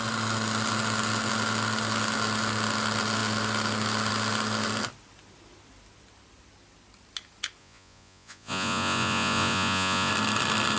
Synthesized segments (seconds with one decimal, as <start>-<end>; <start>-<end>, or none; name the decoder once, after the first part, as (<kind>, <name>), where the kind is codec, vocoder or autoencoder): 7.6-10.1 (vocoder, Vocos)